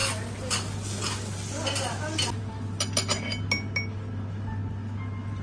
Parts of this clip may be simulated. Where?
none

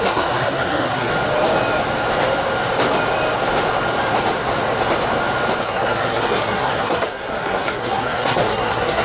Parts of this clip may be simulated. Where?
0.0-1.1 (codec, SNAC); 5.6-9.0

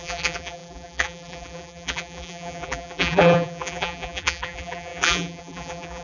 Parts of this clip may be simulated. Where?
0.0-6.0 (vocoder, BigVGAN v2)

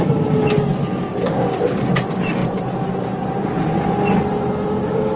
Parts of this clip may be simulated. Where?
0.9-1.6 (codec, DAC)

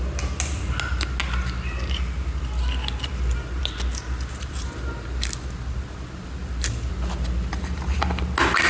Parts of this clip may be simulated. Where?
none